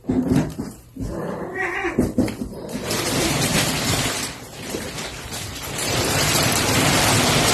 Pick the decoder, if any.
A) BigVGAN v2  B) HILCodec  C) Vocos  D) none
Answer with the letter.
A